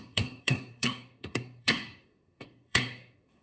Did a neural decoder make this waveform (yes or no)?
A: yes